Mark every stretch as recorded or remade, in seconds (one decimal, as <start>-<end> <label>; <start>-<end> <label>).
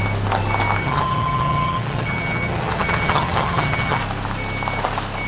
0.0-0.8 recorded; 0.8-4.0 remade; 4.0-5.3 recorded